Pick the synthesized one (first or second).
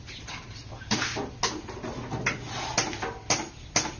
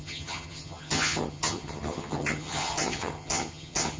second